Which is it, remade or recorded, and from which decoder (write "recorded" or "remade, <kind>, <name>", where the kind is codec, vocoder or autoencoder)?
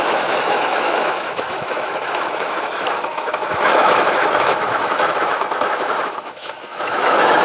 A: remade, autoencoder, DAC-VAE